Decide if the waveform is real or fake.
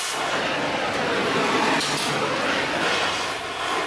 real